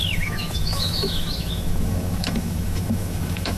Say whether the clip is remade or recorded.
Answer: remade